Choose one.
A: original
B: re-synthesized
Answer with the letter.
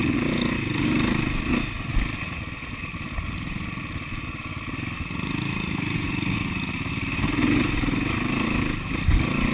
A